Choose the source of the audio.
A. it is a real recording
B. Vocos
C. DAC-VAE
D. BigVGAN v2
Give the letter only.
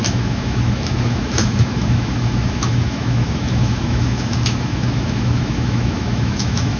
C